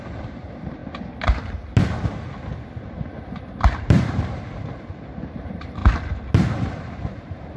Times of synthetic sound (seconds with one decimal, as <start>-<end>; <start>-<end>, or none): 0.0-0.8; 3.8-5.8; 6.8-7.6